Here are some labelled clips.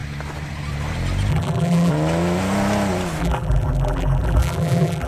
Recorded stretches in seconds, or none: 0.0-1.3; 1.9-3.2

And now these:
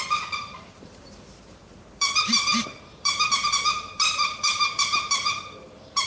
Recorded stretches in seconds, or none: none

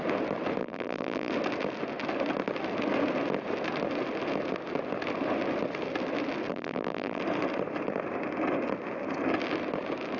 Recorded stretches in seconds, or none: 0.0-0.6; 1.3-6.5; 7.2-10.2

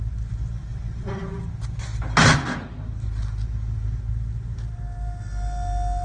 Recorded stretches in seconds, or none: 0.0-0.7; 1.4-6.0

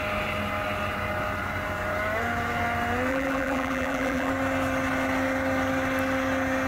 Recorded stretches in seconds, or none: 0.0-3.1; 4.3-6.7

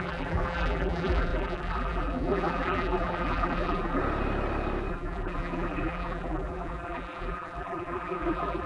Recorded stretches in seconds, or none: 4.0-4.9